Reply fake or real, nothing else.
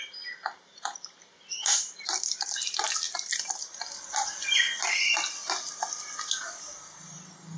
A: real